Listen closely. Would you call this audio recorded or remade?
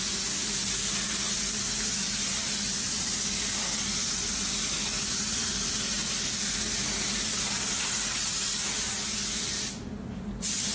recorded